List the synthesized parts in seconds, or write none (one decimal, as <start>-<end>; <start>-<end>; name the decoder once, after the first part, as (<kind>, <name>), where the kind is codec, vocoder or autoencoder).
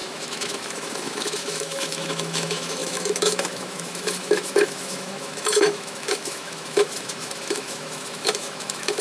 0.0-9.0 (autoencoder, DAC-VAE)